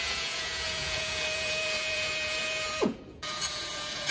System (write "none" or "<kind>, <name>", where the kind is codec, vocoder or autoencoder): vocoder, Vocos